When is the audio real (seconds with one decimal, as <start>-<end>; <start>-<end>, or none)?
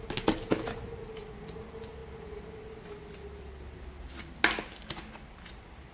0.0-5.9